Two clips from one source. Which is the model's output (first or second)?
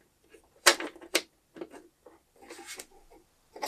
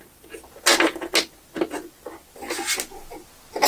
first